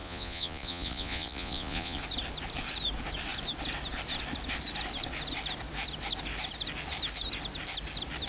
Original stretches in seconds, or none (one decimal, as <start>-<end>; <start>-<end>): 2.0-8.3